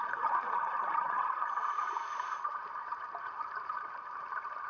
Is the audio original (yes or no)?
no